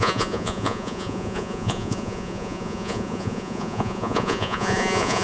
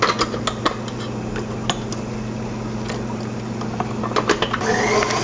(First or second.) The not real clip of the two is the first